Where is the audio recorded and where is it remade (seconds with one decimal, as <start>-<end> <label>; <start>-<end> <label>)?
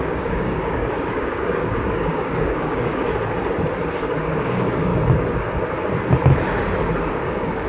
0.0-3.1 remade; 3.1-4.4 recorded; 4.4-4.9 remade; 4.9-7.1 recorded; 7.1-7.7 remade